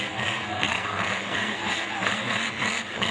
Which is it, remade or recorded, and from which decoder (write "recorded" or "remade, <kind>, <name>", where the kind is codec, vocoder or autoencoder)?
remade, codec, SNAC